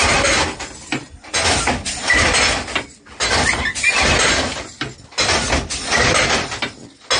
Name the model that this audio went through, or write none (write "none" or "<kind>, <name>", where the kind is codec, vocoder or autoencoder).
none